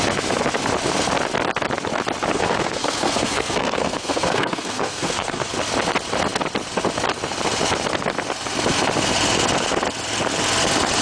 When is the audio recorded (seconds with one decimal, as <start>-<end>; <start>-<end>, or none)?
0.0-2.3; 5.5-11.0